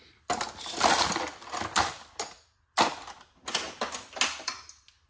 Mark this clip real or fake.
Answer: real